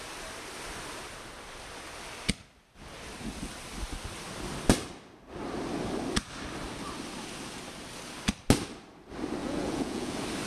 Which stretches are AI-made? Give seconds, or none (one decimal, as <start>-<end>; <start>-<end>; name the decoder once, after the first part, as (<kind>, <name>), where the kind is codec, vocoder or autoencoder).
9.4-10.1 (vocoder, Vocos)